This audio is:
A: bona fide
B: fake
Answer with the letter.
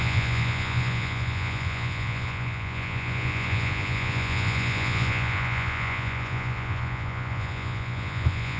B